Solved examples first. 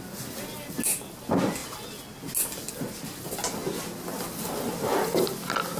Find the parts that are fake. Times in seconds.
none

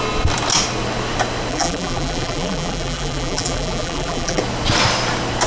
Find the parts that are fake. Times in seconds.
1.5-4.4 (vocoder, BigVGAN v2)

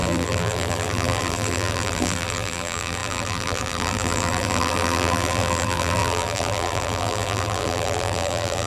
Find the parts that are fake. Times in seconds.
0.0-8.7 (vocoder, BigVGAN v2)

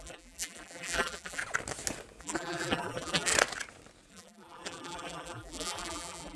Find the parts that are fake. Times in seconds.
0.0-1.4 (vocoder, BigVGAN v2); 2.2-3.3; 4.1-6.4

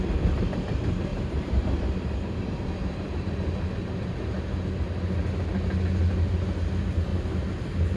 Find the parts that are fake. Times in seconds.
1.1-3.3 (vocoder, BigVGAN v2); 3.8-4.6

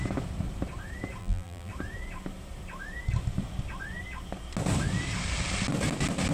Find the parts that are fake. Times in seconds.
1.2-1.7 (vocoder, BigVGAN v2)

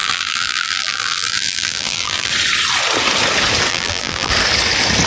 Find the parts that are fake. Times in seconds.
0.0-2.3 (vocoder, BigVGAN v2); 3.7-4.3

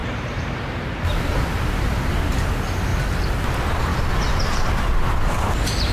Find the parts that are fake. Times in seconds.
0.0-2.2 (vocoder, BigVGAN v2); 3.9-4.7